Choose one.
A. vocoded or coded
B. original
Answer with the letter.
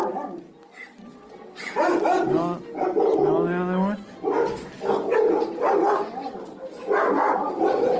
B